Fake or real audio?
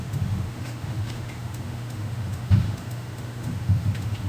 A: fake